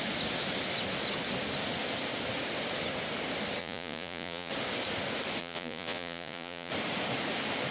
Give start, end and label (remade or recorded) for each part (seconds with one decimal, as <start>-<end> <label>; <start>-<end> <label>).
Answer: 0.0-3.6 recorded; 3.6-4.5 remade; 4.5-5.4 recorded; 5.4-6.7 remade; 6.7-7.7 recorded